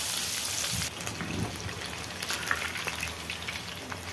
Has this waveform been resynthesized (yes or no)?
no